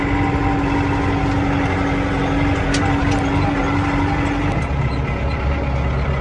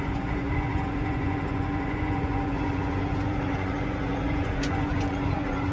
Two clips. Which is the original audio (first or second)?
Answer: first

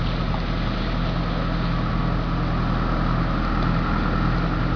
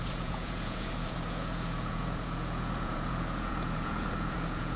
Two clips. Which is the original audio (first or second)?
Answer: first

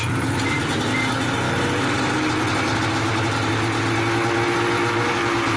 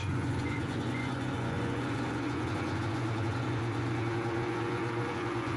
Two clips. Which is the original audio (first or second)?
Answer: first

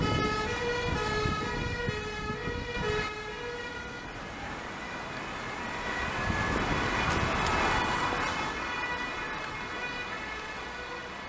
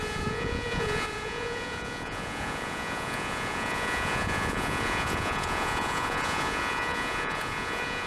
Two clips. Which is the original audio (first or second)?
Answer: first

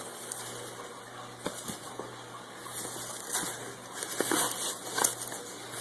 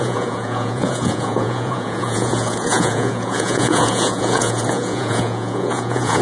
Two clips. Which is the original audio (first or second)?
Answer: first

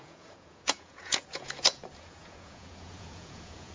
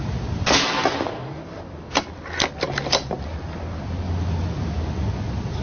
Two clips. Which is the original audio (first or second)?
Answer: second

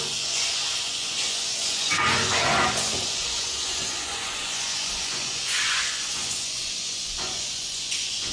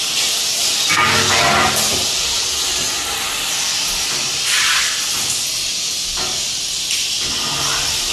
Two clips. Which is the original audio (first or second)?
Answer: second